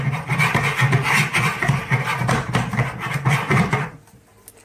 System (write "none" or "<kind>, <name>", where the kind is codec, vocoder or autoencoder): none